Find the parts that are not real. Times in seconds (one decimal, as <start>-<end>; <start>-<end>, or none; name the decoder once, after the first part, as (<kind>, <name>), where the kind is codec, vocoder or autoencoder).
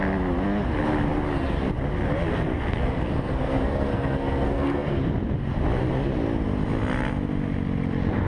2.3-5.0 (codec, SNAC)